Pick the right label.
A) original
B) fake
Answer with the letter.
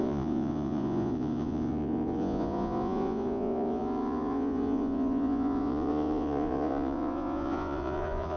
B